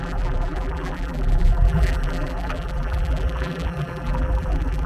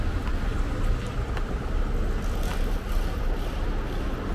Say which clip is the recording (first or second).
second